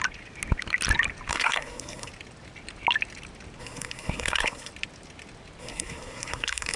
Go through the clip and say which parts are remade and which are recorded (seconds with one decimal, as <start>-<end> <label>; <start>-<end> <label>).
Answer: 0.0-1.3 recorded; 1.3-2.1 remade; 2.1-3.6 recorded; 3.6-4.7 remade; 4.7-5.6 recorded; 5.6-6.8 remade